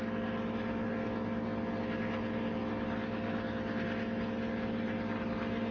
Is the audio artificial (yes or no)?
no